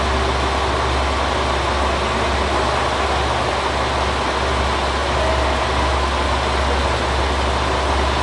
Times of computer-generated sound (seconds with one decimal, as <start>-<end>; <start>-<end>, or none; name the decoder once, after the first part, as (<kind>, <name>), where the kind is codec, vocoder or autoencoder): none